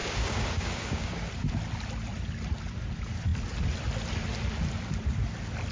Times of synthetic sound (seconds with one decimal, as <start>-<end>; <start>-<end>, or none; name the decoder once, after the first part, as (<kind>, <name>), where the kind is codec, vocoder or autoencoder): 0.0-1.3 (codec, DAC)